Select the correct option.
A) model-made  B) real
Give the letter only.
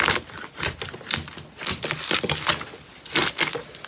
B